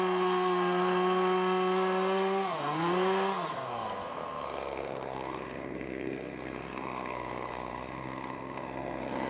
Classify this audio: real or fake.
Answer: fake